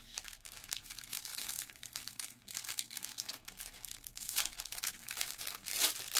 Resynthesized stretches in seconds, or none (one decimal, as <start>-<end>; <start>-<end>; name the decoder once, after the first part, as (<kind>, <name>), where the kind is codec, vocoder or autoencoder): 0.0-5.7 (codec, SNAC)